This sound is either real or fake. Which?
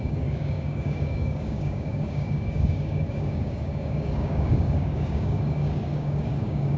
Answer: fake